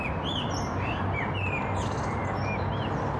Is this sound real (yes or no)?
yes